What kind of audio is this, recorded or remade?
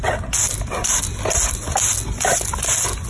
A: recorded